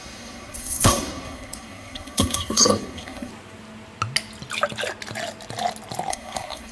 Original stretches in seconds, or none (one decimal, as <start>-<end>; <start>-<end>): 3.3-6.1